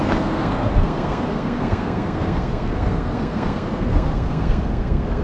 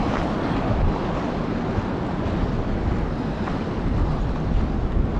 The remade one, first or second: first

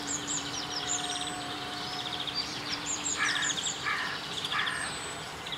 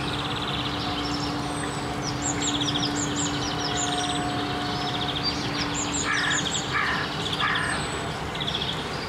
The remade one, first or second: first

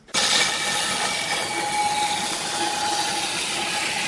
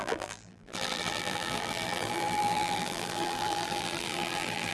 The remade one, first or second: second